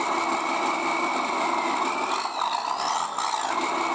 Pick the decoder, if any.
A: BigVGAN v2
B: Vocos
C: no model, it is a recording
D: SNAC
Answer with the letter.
C